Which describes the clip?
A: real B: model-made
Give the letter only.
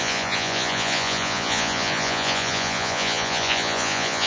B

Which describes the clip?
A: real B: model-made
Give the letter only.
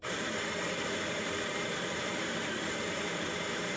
B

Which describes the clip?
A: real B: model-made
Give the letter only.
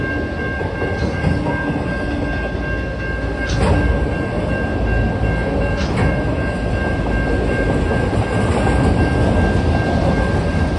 A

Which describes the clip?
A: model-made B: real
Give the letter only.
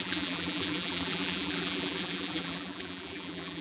A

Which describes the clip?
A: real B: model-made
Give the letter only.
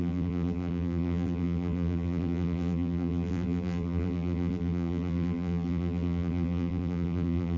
B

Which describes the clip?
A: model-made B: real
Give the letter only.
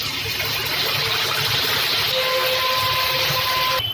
B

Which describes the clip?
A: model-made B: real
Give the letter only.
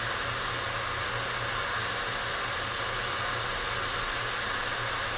B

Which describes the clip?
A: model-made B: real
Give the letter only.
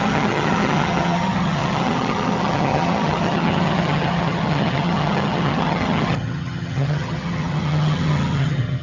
A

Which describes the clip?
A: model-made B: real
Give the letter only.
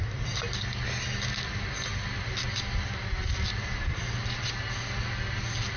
B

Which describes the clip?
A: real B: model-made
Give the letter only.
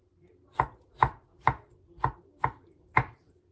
A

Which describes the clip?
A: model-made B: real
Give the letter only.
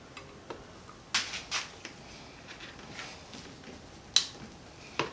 B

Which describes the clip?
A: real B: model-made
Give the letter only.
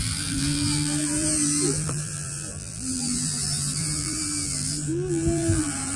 B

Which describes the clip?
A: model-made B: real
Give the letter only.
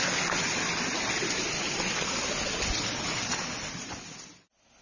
B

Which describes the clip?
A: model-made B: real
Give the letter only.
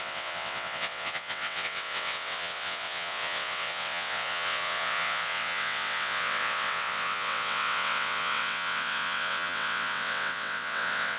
A